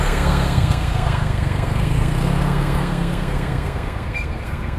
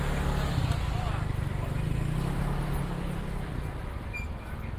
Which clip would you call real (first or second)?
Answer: second